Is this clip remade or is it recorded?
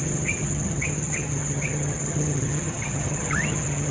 remade